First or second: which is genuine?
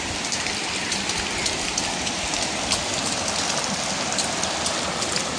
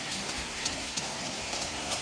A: first